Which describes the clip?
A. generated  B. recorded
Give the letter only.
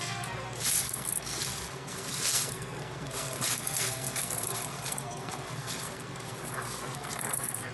A